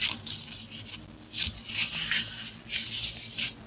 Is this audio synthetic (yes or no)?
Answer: no